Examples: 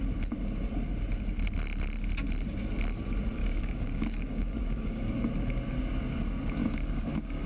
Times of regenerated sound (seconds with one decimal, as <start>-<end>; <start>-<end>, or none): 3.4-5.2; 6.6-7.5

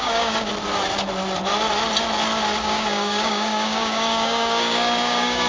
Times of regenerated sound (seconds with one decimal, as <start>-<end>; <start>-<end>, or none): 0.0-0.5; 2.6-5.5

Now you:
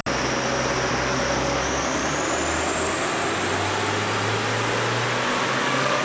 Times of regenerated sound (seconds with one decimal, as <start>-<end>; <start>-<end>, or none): 0.9-2.0; 5.6-6.0

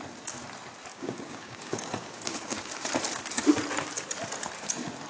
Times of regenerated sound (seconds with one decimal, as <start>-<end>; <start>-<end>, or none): 0.9-2.7

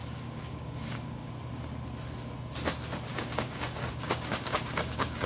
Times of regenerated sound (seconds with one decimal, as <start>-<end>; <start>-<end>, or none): 0.0-1.3; 3.1-5.3

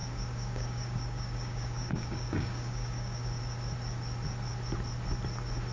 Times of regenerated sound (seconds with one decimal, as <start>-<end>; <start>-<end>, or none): 0.0-3.4

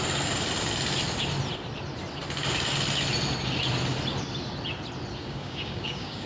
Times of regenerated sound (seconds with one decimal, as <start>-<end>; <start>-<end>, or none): 5.2-6.3